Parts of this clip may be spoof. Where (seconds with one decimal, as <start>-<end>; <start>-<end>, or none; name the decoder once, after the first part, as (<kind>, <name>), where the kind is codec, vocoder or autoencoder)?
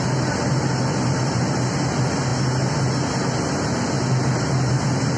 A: none